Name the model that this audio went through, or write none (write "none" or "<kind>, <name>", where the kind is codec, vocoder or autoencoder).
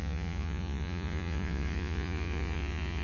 vocoder, Vocos